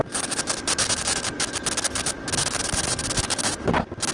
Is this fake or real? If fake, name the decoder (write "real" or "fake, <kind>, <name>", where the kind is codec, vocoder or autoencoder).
real